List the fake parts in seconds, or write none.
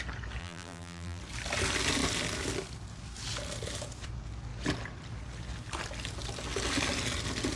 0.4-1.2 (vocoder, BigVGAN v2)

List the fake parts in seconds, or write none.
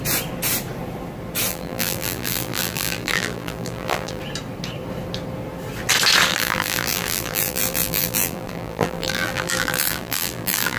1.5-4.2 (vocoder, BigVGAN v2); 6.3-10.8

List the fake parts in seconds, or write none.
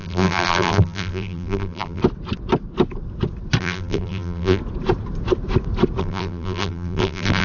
0.0-2.0 (vocoder, BigVGAN v2); 3.6-4.6; 6.0-7.4